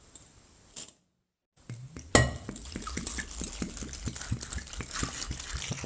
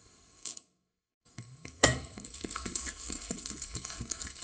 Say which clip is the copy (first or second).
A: second